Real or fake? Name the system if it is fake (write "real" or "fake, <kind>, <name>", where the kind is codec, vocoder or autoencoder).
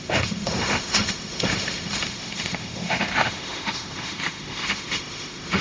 fake, autoencoder, DAC-VAE